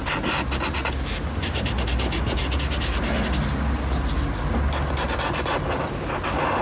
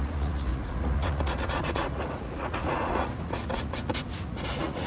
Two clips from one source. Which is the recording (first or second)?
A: first